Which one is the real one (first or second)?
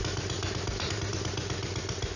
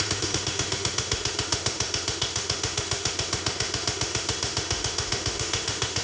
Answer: first